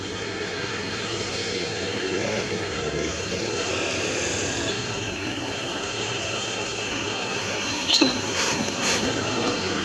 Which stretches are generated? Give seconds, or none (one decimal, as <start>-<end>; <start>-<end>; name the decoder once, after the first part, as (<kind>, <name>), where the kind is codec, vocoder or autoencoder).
0.0-3.7 (codec, SNAC); 4.7-9.8